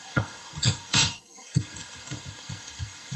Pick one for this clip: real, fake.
fake